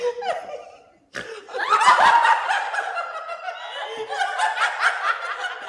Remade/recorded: recorded